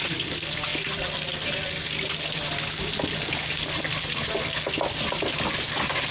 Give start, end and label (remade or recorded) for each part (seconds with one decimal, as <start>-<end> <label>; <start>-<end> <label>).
0.0-6.1 recorded